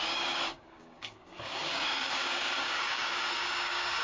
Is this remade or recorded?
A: remade